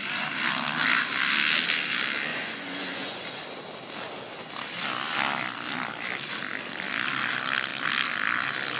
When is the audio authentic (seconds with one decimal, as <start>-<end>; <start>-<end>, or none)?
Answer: 0.0-2.3; 3.2-8.8